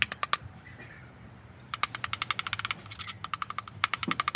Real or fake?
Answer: real